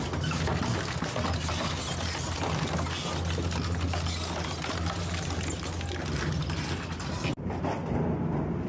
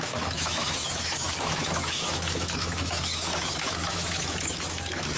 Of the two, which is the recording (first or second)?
first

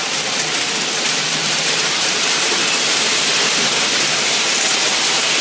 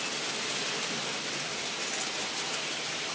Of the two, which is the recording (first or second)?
second